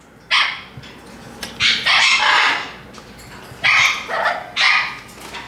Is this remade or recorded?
recorded